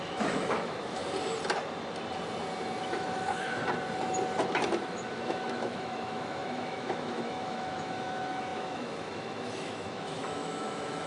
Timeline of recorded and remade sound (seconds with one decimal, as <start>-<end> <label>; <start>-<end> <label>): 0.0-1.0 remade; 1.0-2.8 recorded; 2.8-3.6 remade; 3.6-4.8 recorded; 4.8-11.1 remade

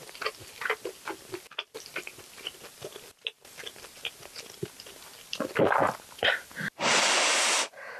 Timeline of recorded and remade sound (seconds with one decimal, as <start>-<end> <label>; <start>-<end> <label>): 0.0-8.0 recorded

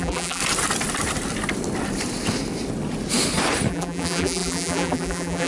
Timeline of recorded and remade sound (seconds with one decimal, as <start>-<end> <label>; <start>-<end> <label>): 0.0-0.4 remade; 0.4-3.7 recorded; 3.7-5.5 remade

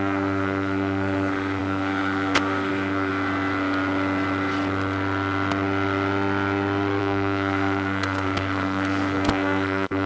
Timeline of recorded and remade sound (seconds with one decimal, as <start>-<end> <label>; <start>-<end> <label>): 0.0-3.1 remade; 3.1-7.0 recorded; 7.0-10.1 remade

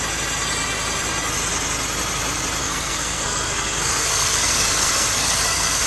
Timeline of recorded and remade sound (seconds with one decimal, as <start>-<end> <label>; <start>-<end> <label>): 0.0-2.6 recorded; 2.6-5.9 remade

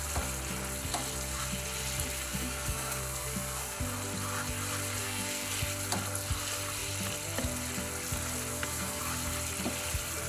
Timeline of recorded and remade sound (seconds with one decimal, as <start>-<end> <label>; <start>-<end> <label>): 0.0-2.3 recorded; 2.3-3.8 remade; 3.8-5.0 recorded; 5.0-5.5 remade; 5.5-8.5 recorded; 8.5-9.0 remade; 9.0-10.3 recorded

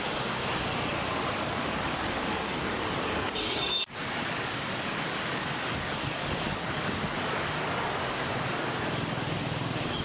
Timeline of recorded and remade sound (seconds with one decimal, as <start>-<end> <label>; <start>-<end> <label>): 0.0-0.4 remade; 0.4-1.3 recorded; 1.3-10.0 remade

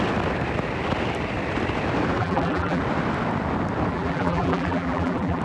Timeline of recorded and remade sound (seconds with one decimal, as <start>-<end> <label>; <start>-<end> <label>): 0.0-2.2 recorded; 2.2-2.8 remade; 2.8-3.9 recorded; 3.9-5.4 remade